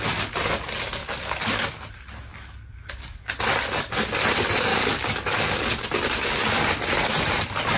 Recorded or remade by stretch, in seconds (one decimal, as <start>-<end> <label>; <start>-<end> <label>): 0.0-1.0 recorded; 1.0-1.7 remade; 1.7-2.3 recorded; 2.3-3.3 remade; 3.3-4.7 recorded; 4.7-6.5 remade; 6.5-7.8 recorded